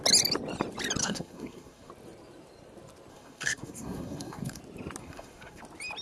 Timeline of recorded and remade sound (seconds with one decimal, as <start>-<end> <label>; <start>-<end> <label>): 0.0-1.0 recorded; 1.0-1.9 remade; 1.9-3.1 recorded; 3.1-4.6 remade; 4.6-5.0 recorded; 5.0-5.6 remade; 5.6-6.0 recorded